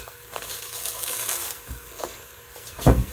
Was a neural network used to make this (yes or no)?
yes